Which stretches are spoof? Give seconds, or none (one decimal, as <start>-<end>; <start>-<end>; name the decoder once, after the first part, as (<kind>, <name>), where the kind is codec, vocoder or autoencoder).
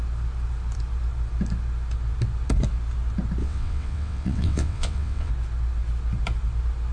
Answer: 3.4-5.3 (vocoder, WaveNeXt)